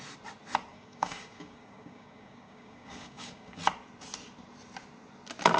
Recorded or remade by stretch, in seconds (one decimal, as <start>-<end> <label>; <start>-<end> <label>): 0.0-0.7 recorded; 0.7-3.6 remade; 3.6-5.6 recorded